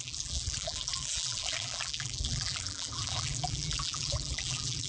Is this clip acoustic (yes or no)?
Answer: no